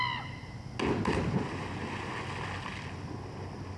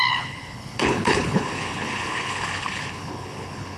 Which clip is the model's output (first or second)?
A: second